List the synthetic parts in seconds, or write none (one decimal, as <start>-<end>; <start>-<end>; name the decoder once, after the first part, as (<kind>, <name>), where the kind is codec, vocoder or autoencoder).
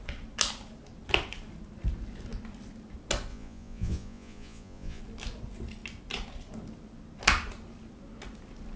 3.3-5.0 (vocoder, Vocos)